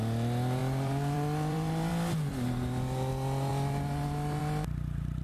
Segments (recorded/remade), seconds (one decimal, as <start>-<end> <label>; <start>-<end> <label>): 0.0-0.6 recorded; 0.6-1.9 remade; 1.9-5.2 recorded

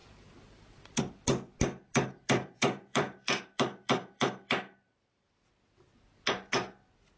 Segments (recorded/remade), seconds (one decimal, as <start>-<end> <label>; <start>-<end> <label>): 0.0-1.0 remade; 1.0-1.9 recorded; 1.9-5.4 remade; 5.4-7.2 recorded

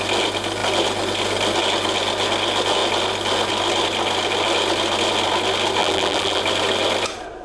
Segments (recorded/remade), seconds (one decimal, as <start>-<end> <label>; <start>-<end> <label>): 0.0-5.8 recorded; 5.8-6.4 remade; 6.4-7.4 recorded